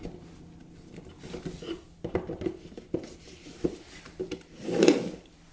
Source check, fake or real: real